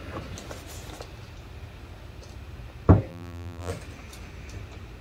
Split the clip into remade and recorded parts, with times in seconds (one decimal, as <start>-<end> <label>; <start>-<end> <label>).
0.0-3.1 recorded; 3.1-3.7 remade; 3.7-5.0 recorded